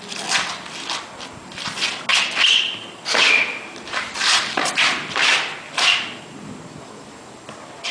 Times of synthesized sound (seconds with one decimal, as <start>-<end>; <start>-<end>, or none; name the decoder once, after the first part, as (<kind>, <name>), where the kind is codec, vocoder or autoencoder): none